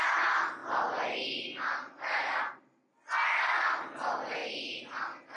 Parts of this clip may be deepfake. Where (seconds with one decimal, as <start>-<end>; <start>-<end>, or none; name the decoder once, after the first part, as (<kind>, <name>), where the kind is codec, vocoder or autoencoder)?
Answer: 0.0-0.6 (vocoder, BigVGAN v2); 3.7-4.4